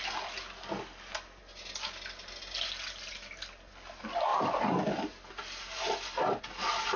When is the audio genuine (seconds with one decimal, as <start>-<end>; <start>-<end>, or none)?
0.0-7.0